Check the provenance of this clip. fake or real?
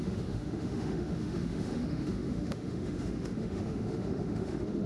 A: fake